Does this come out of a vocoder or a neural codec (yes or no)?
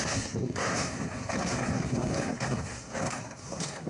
yes